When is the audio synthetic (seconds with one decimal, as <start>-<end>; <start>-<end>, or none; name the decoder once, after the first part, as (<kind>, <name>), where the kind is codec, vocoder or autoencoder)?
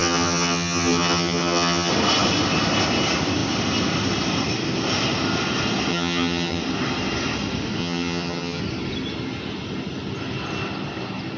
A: 0.0-1.9 (vocoder, HiFi-GAN); 5.9-6.6; 7.8-8.6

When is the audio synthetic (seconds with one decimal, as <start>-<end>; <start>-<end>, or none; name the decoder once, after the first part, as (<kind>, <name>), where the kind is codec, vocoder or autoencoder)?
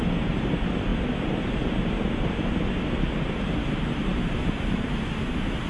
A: none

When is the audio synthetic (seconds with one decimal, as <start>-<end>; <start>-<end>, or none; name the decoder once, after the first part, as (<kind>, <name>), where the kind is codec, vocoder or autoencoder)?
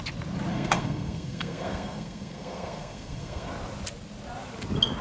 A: 0.5-3.5 (codec, SNAC)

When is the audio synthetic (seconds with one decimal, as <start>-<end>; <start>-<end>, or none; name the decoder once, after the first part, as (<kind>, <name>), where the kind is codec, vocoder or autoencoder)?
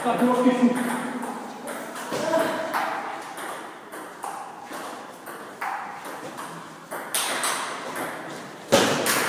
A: 1.0-2.6 (vocoder, BigVGAN v2)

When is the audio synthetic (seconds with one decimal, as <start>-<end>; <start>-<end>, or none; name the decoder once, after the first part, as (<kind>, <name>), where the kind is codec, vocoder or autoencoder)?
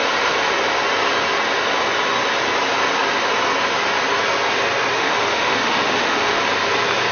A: 5.0-6.4 (autoencoder, DAC-VAE)